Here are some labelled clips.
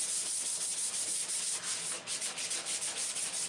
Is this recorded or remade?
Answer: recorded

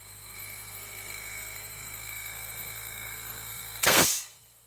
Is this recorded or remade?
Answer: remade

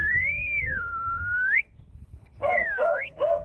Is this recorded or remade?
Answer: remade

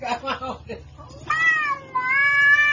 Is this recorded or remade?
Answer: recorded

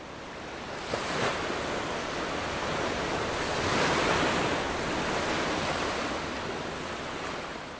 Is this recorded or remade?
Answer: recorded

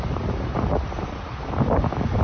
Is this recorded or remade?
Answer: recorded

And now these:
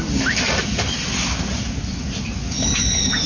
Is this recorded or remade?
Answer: recorded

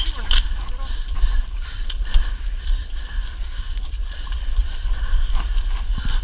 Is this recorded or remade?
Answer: recorded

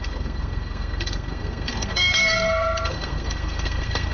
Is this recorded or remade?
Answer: remade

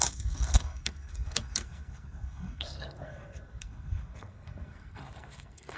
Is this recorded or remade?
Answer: remade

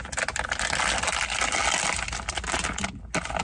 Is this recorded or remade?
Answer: recorded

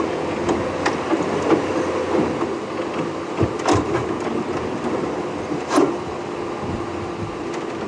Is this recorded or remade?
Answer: recorded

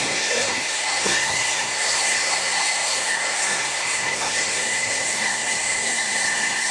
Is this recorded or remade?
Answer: remade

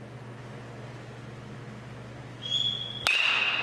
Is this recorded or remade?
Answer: recorded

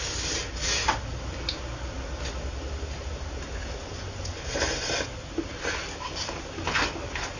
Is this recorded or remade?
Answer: recorded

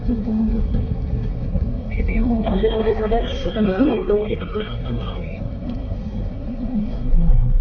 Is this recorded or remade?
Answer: remade